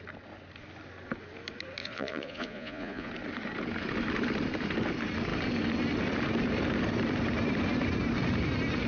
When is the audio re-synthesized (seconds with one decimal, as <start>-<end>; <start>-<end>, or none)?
1.8-3.1